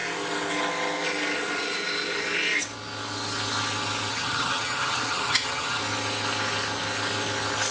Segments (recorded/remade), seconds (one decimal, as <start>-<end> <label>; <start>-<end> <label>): 0.0-4.1 recorded; 4.1-5.8 remade; 5.8-7.7 recorded